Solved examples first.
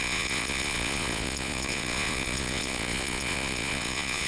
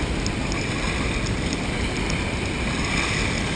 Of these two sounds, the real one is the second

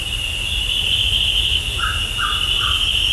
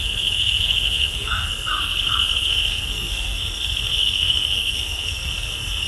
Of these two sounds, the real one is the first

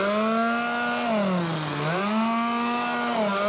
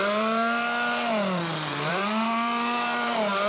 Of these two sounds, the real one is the first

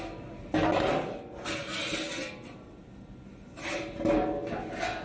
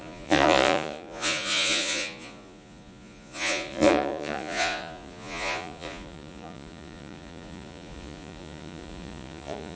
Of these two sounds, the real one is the first